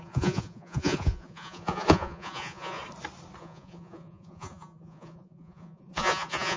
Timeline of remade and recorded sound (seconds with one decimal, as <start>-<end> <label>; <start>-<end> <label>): 0.0-2.8 remade; 2.8-3.4 recorded; 3.4-6.6 remade